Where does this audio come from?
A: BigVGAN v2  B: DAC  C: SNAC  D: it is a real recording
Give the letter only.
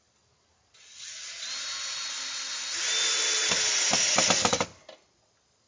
D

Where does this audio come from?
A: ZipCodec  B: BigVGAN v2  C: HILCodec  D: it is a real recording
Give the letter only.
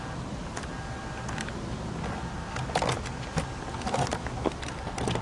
D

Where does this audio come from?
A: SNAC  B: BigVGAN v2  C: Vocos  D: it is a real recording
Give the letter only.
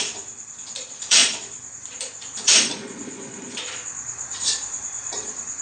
C